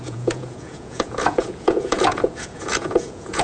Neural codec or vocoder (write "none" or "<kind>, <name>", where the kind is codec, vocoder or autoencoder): vocoder, Vocos